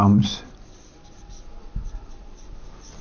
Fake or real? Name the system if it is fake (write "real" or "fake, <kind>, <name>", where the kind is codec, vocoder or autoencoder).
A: real